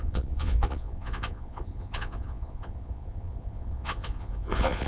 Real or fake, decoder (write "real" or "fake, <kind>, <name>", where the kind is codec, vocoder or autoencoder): fake, vocoder, Vocos